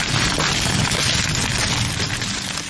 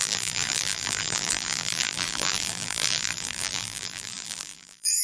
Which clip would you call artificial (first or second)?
second